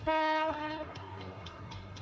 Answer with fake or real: fake